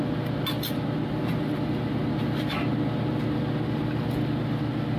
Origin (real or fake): real